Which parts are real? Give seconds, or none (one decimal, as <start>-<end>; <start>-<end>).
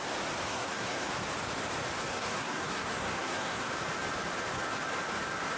0.0-0.5; 1.1-2.0; 3.7-5.6